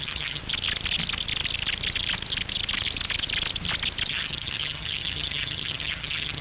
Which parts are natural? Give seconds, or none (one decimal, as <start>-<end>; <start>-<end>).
0.4-4.1